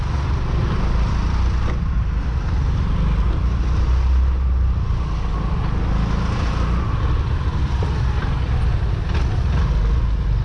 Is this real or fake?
real